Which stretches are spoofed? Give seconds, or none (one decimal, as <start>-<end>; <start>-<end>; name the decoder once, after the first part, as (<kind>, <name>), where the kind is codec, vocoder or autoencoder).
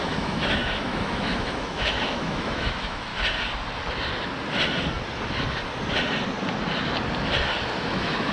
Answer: 0.0-3.1 (autoencoder, DAC-VAE); 7.8-8.3